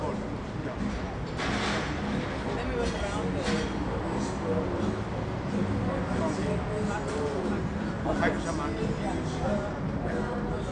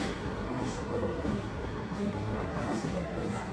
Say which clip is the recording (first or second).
first